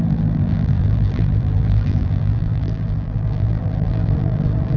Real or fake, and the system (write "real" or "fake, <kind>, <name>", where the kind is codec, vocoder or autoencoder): fake, vocoder, BigVGAN v2